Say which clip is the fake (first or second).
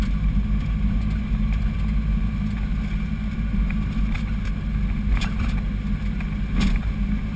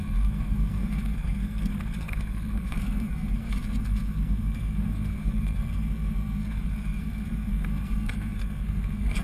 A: second